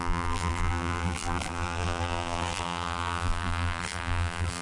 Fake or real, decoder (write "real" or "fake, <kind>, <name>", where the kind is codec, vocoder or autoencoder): fake, vocoder, BigVGAN v2